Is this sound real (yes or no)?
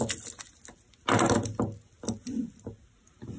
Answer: yes